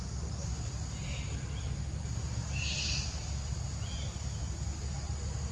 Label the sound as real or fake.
real